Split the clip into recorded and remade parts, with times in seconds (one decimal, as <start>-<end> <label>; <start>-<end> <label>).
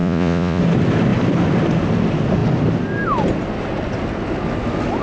0.0-0.6 remade; 0.6-5.0 recorded